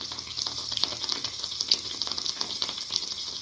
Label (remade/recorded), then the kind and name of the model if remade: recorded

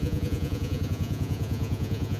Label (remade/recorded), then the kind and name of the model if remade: remade, vocoder, Vocos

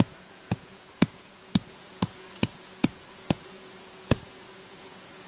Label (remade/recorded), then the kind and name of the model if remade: remade, vocoder, Vocos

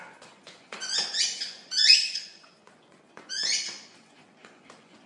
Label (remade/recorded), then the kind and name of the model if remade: remade, vocoder, Vocos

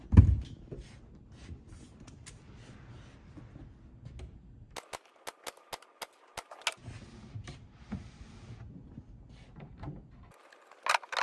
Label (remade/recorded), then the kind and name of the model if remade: recorded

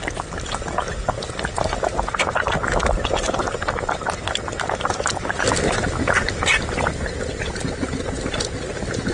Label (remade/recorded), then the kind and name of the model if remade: recorded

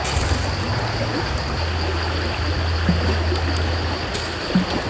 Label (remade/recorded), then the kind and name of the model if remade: recorded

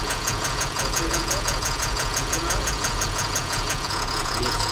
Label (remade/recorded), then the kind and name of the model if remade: remade, vocoder, Vocos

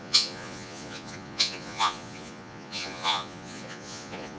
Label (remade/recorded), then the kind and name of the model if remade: remade, vocoder, Vocos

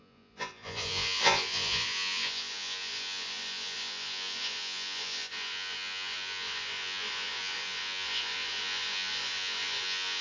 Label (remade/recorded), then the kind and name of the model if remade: remade, vocoder, Vocos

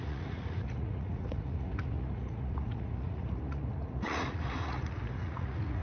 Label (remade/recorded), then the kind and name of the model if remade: remade, vocoder, Vocos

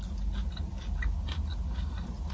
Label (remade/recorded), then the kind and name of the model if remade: recorded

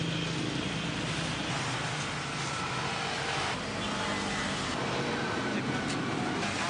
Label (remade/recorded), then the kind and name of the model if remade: recorded